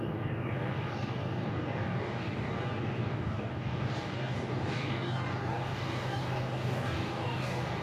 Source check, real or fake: fake